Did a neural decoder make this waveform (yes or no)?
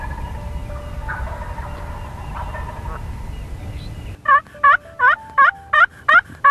no